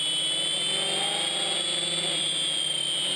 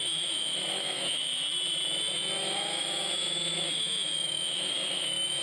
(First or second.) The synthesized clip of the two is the second